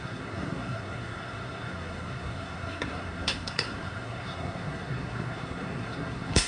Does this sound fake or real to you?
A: fake